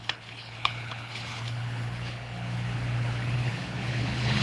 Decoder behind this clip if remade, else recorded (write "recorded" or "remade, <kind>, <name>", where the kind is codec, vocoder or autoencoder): remade, codec, HILCodec